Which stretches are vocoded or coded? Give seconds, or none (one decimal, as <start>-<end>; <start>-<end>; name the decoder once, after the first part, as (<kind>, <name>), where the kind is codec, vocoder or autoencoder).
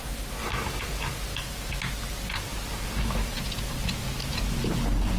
none